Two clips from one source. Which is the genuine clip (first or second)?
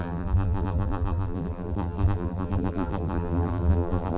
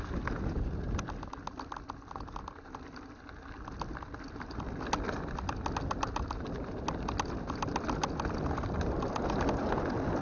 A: second